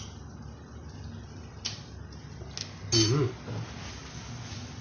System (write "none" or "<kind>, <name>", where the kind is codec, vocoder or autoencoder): none